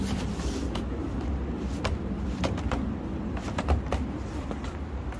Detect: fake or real real